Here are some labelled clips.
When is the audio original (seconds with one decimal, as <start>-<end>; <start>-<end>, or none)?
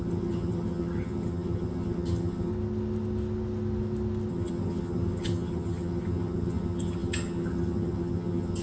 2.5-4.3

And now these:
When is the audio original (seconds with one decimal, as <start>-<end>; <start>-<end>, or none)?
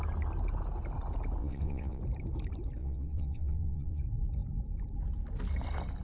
0.0-1.4; 2.0-2.8; 4.0-6.0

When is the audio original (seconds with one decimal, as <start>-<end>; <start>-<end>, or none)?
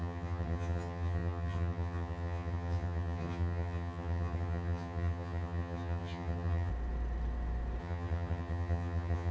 6.7-7.8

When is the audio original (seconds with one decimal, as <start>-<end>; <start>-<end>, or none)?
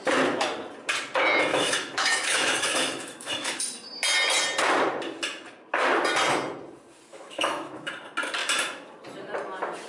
0.0-1.5; 3.6-7.1; 7.9-9.9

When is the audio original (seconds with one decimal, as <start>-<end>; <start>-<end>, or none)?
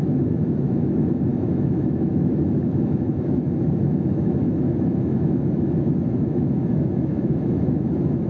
none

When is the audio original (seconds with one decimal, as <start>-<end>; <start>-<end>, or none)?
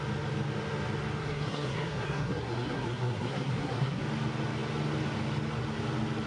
0.0-1.2; 4.0-6.3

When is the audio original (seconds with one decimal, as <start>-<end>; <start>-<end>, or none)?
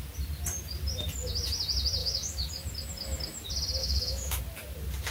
0.0-2.0; 2.5-3.8; 4.4-5.1